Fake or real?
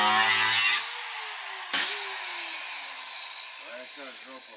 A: real